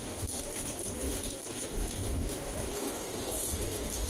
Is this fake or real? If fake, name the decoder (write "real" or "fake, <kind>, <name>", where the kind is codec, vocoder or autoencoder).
fake, codec, DAC